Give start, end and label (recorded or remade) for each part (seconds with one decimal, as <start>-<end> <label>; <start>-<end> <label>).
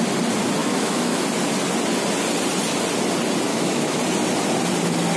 0.0-0.6 recorded; 0.6-1.2 remade; 1.2-3.5 recorded; 3.5-4.0 remade; 4.0-5.2 recorded